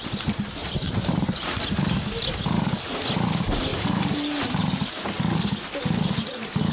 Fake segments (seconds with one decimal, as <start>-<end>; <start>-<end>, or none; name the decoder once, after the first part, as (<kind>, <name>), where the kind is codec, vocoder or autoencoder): 0.6-1.6 (vocoder, BigVGAN v2); 3.7-4.6